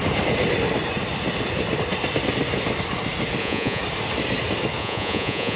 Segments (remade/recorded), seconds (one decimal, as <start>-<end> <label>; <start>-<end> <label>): 0.0-3.4 recorded; 3.4-3.8 remade; 3.8-4.8 recorded; 4.8-5.6 remade